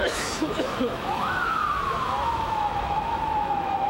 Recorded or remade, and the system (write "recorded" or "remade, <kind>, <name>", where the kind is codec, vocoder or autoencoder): remade, autoencoder, DAC-VAE